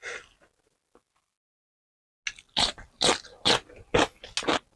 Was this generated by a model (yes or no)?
no